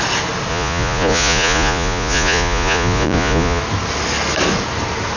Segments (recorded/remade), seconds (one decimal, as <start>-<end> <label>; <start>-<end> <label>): 0.0-0.5 recorded; 0.5-3.6 remade; 3.6-5.2 recorded